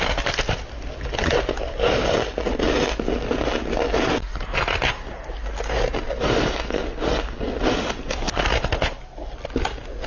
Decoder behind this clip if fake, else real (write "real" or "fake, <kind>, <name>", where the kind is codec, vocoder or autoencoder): real